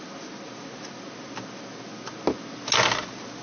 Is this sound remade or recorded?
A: recorded